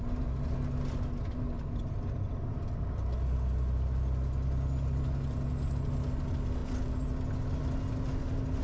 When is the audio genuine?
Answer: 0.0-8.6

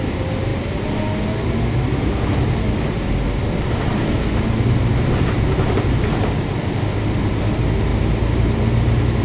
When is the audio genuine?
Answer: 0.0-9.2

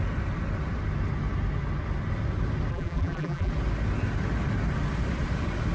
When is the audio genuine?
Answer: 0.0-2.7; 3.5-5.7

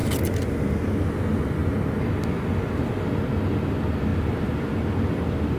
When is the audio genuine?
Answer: 0.0-1.6; 2.1-5.6

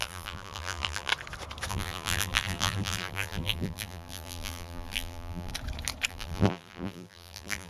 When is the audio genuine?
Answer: 1.1-1.7; 5.5-6.1

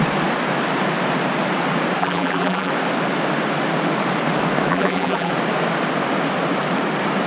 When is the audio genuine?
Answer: 0.0-2.0; 2.7-4.7; 5.3-7.3

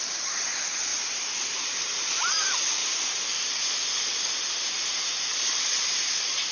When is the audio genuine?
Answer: 4.1-4.9

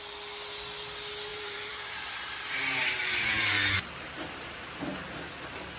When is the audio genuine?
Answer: 0.0-1.3; 4.8-5.8